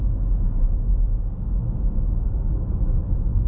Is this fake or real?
real